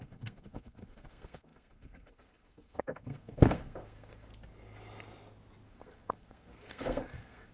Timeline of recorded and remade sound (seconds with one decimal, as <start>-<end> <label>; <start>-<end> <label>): 0.0-4.3 remade; 4.3-5.7 recorded; 5.7-7.5 remade